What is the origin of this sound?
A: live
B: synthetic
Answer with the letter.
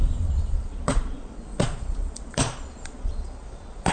B